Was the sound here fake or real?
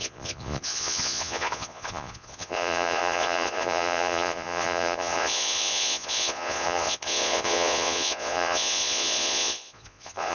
fake